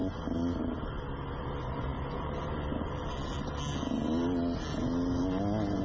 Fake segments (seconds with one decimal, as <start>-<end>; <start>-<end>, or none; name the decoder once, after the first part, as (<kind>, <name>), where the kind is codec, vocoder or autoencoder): none